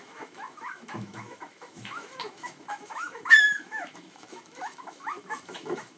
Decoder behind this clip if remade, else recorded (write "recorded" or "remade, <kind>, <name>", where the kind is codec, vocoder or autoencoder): remade, autoencoder, DAC-VAE